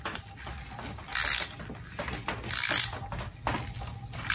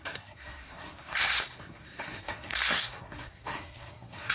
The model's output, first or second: second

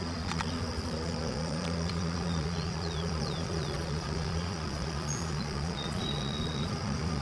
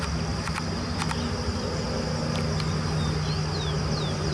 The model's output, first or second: first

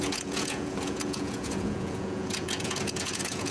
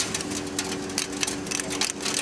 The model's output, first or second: first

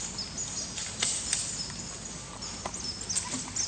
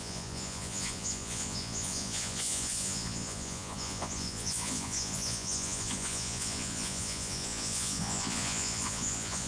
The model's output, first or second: second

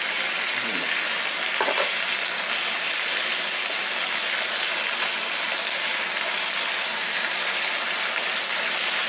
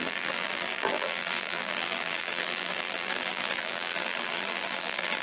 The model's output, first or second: second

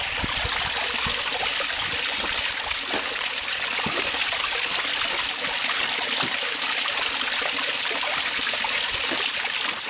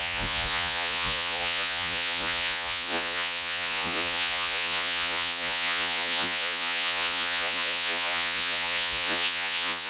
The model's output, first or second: second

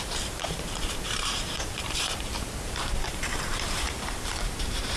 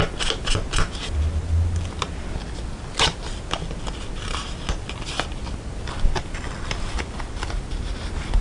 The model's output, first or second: first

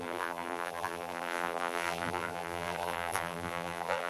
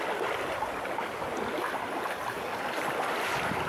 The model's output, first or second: first